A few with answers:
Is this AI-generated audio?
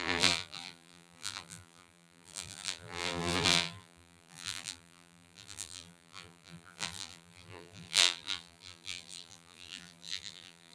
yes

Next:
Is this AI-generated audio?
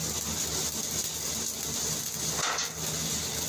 no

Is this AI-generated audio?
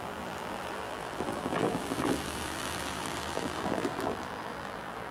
yes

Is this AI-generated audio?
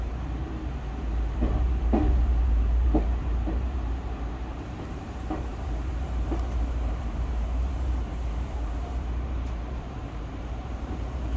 yes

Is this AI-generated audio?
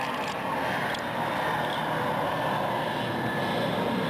no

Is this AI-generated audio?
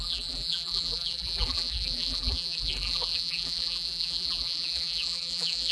yes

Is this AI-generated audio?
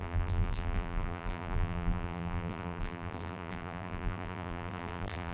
yes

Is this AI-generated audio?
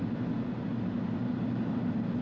no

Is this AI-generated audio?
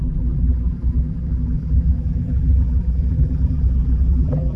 yes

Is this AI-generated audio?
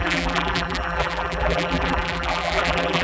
yes